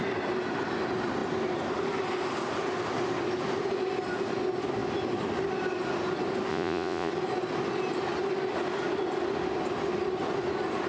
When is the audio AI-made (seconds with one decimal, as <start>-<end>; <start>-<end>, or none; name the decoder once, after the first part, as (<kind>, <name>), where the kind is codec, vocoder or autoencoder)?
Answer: 6.5-7.1 (vocoder, Vocos)